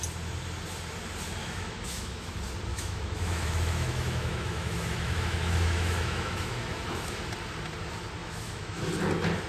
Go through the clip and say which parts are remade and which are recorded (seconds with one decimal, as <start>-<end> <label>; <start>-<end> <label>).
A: 0.0-1.4 recorded; 1.4-2.3 remade; 2.3-2.7 recorded; 2.7-7.2 remade; 7.2-8.2 recorded; 8.2-8.9 remade; 8.9-9.5 recorded